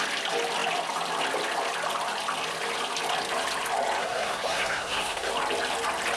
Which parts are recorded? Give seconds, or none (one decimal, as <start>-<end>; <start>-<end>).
0.0-4.0; 5.3-6.2